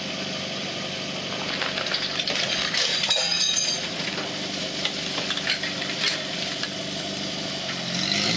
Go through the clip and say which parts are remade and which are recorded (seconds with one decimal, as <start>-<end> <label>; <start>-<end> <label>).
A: 0.0-2.9 recorded; 2.9-4.1 remade; 4.1-8.4 recorded